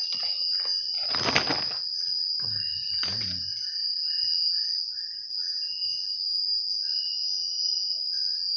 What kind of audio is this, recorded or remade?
recorded